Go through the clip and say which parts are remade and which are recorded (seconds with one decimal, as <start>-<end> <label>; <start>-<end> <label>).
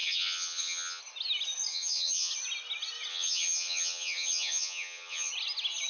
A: 0.0-1.0 remade; 1.0-1.7 recorded; 1.7-2.3 remade; 2.3-3.1 recorded; 3.1-5.3 remade; 5.3-5.9 recorded